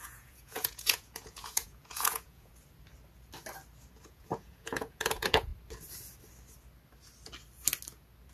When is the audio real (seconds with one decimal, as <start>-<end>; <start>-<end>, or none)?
2.5-4.1; 5.5-8.3